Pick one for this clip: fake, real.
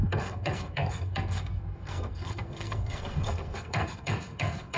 fake